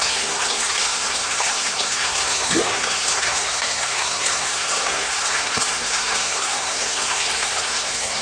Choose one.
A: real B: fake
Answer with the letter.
B